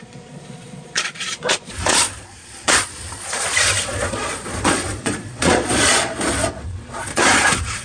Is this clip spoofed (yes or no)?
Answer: yes